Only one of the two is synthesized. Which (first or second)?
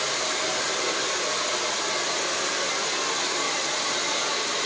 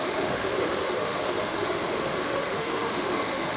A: second